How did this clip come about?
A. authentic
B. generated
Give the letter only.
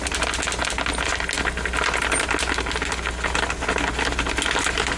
A